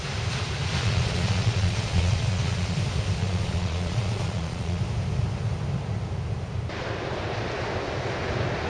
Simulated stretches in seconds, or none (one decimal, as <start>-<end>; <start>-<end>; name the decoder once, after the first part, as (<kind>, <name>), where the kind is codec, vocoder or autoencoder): 0.8-2.8 (vocoder, Vocos); 3.2-4.8